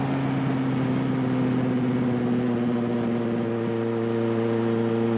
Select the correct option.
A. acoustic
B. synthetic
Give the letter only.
A